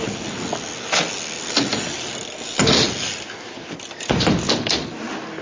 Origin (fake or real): real